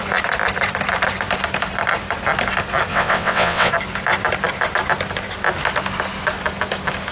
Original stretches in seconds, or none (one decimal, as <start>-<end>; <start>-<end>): 0.0-2.9; 3.7-7.1